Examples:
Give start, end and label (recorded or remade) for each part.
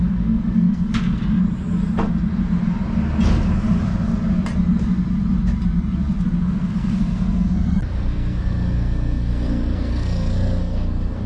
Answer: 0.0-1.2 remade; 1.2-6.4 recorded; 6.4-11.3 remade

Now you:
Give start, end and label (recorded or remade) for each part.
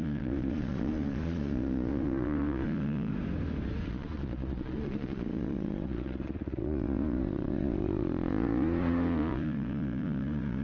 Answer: 0.0-3.1 remade; 3.1-3.9 recorded; 3.9-10.6 remade